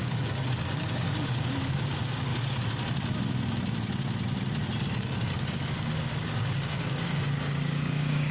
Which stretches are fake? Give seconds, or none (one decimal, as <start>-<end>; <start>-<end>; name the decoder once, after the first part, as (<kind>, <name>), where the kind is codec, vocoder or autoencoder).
0.0-2.3 (codec, DAC); 4.8-8.3